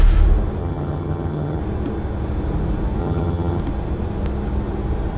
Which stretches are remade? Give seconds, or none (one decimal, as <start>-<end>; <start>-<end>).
0.6-1.6; 3.0-3.6